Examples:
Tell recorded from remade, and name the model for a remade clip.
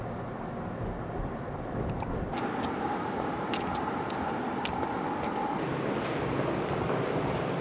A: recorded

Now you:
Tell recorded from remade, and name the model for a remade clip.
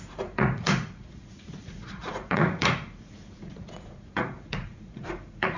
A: remade, vocoder, Vocos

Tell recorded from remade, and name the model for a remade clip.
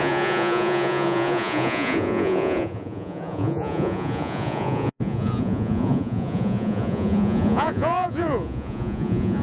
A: remade, vocoder, Vocos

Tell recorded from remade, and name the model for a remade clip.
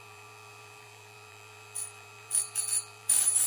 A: remade, vocoder, BigVGAN v2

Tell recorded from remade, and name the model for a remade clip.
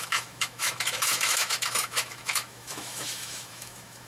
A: remade, autoencoder, DAC-VAE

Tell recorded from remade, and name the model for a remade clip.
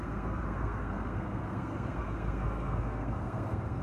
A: remade, codec, SNAC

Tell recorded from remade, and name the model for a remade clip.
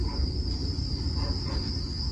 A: recorded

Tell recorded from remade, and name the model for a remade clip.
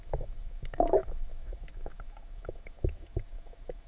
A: remade, autoencoder, DAC-VAE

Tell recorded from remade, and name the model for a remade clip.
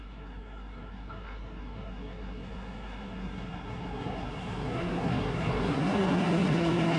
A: remade, codec, SNAC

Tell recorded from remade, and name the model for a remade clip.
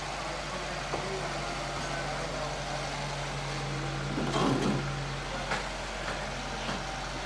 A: recorded